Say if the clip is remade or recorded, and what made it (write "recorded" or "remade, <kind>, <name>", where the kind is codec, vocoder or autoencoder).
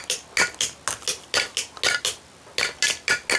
recorded